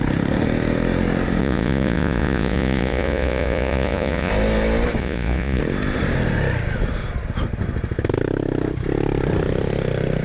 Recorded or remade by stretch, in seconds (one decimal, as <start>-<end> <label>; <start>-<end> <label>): 0.0-1.4 recorded; 1.4-4.3 remade; 4.3-5.0 recorded; 5.0-5.6 remade; 5.6-10.2 recorded